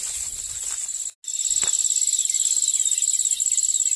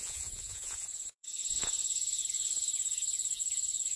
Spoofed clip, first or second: second